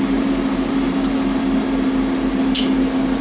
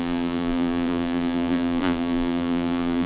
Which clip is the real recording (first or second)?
first